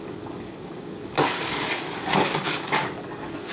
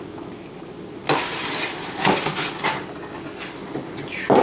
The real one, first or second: second